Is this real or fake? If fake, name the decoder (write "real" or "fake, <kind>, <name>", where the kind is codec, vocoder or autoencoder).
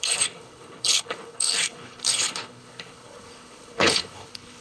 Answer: fake, codec, HILCodec